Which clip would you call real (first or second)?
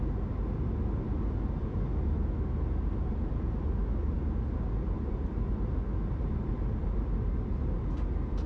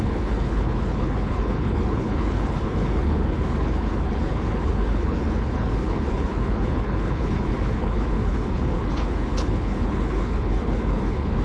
first